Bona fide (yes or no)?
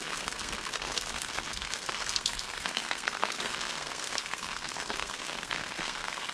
no